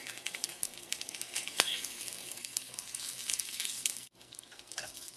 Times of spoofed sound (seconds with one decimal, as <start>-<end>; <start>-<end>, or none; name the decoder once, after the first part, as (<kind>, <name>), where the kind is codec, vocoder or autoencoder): 0.0-5.2 (codec, SNAC)